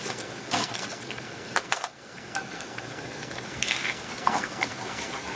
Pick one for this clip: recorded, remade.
remade